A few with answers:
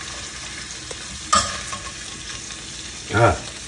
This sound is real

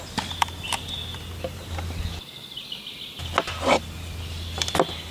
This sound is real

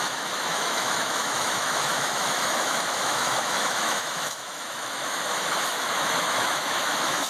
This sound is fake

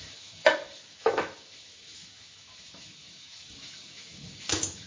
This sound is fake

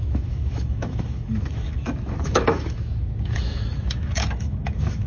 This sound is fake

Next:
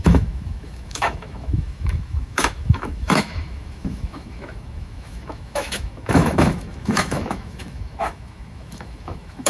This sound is fake